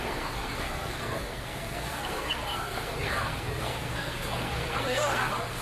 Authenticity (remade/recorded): remade